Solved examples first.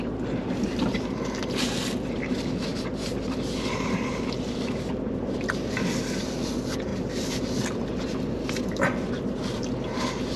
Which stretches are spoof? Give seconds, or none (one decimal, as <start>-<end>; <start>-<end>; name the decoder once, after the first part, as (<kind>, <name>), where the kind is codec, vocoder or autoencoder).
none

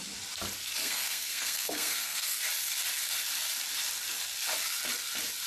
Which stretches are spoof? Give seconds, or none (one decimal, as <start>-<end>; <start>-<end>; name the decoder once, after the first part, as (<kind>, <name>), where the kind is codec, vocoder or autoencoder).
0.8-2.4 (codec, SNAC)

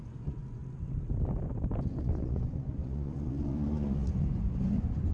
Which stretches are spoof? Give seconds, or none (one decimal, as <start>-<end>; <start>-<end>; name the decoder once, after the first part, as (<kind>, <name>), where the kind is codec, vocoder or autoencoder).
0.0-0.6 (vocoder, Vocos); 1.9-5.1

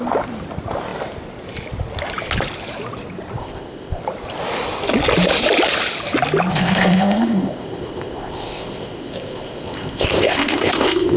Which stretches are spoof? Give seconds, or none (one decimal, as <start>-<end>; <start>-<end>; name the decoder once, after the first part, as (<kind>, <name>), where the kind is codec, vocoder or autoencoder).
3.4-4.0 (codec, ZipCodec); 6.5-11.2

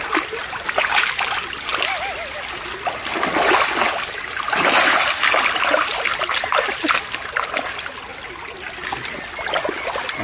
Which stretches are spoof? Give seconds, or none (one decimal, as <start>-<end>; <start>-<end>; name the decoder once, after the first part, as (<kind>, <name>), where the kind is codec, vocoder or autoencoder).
none